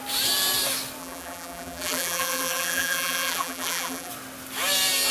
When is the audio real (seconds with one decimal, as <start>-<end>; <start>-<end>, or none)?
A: 0.0-1.0; 4.1-5.1